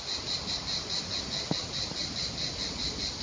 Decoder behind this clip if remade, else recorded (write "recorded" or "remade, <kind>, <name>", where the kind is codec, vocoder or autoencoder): recorded